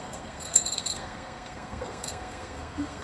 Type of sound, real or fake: fake